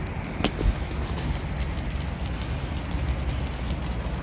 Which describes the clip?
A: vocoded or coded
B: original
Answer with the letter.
B